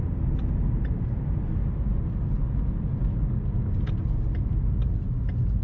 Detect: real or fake real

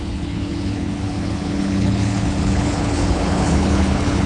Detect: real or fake fake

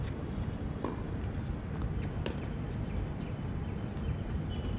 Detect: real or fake real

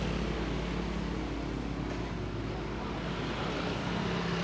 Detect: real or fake real